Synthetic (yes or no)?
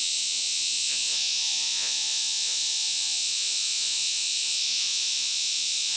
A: yes